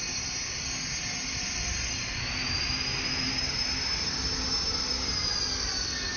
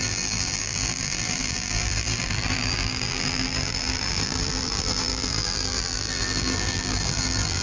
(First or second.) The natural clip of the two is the first